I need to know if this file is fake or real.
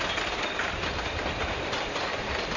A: real